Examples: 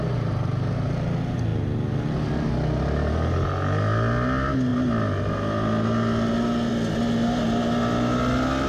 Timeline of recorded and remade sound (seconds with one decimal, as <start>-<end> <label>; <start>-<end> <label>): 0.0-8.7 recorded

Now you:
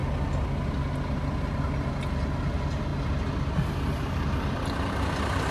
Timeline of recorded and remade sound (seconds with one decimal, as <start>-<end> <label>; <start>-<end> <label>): 0.0-5.5 recorded

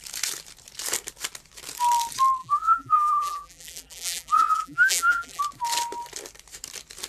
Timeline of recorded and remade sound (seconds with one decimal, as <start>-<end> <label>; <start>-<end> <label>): 0.0-2.4 recorded; 2.4-5.4 remade; 5.4-7.1 recorded

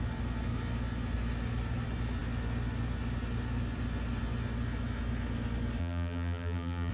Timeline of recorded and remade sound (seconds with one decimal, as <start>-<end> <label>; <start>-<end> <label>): 0.0-5.8 recorded; 5.8-6.9 remade